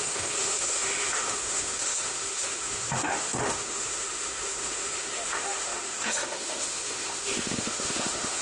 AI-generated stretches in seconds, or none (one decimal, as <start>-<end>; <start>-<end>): 0.0-8.4